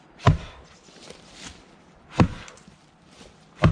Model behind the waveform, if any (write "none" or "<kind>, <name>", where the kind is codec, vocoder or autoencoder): none